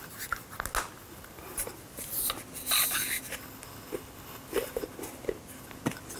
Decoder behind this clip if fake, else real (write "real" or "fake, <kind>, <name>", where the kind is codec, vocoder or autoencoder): real